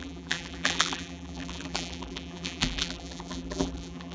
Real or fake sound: fake